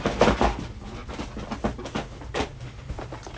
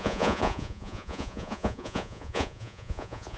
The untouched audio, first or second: first